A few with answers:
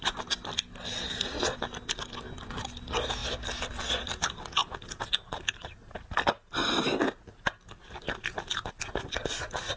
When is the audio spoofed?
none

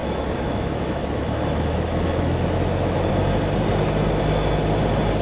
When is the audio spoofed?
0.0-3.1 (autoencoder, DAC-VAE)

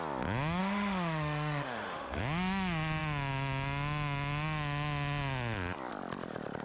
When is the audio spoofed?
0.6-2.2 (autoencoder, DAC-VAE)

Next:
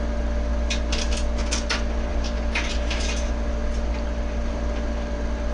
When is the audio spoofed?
none

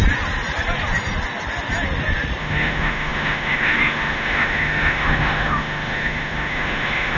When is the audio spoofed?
2.4-7.2 (autoencoder, DAC-VAE)

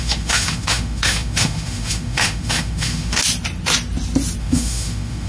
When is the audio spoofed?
0.0-3.2 (autoencoder, DAC-VAE); 4.4-5.3

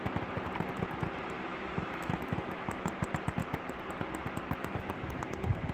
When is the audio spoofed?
1.5-2.9 (autoencoder, DAC-VAE); 4.6-5.2

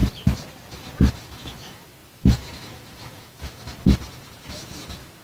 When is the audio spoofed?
1.1-3.7 (autoencoder, DAC-VAE); 4.4-5.2